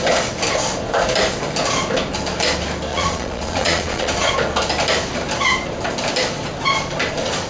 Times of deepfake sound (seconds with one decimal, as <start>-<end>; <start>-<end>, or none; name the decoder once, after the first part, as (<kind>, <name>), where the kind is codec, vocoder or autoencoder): 2.9-4.3 (vocoder, Vocos)